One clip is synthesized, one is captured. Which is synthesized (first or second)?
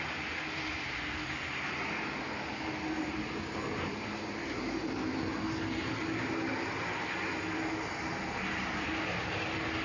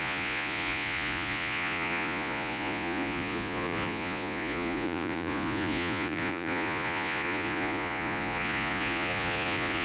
second